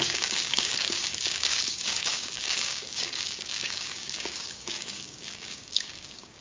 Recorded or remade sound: remade